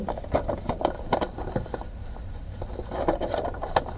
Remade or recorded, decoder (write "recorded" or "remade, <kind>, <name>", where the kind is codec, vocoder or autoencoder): remade, vocoder, BigVGAN v2